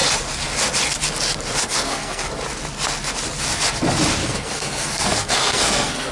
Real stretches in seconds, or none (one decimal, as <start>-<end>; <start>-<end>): 0.0-1.6; 2.3-4.2